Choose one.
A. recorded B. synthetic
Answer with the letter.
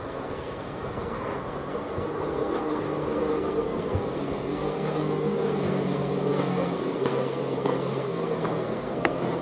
B